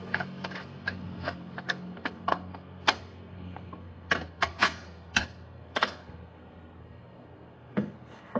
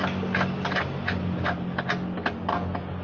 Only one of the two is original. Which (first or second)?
second